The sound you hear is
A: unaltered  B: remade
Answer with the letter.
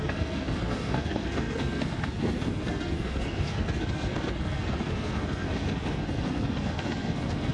B